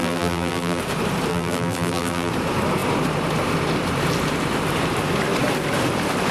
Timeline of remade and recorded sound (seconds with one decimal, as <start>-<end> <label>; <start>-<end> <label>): 0.0-0.8 remade; 0.8-1.3 recorded; 1.3-2.3 remade; 2.3-6.3 recorded

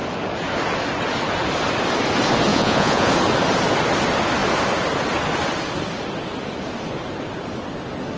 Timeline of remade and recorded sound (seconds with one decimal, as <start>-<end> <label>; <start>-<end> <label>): 0.0-2.5 recorded; 2.5-3.1 remade; 3.1-8.2 recorded

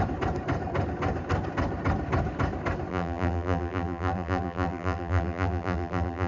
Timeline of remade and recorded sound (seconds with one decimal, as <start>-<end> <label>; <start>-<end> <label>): 0.0-2.9 recorded; 2.9-6.3 remade

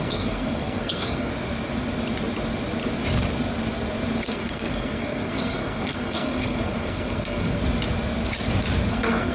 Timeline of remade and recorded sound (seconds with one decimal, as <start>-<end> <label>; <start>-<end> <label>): 0.0-1.3 remade; 1.3-4.2 recorded; 4.2-7.6 remade; 7.6-8.9 recorded; 8.9-9.3 remade

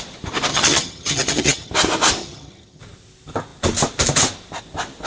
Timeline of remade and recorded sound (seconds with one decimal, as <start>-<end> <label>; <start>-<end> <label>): 0.0-0.5 recorded; 0.5-1.7 remade; 1.7-2.2 recorded; 2.2-2.8 remade; 2.8-5.1 recorded

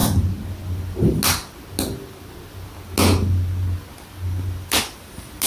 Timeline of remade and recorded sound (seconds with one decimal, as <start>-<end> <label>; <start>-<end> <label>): 0.0-5.5 recorded

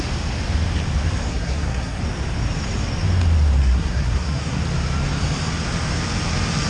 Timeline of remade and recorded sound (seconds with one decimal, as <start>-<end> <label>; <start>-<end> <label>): 0.0-1.3 recorded; 1.3-2.0 remade; 2.0-3.6 recorded; 3.6-4.6 remade; 4.6-6.7 recorded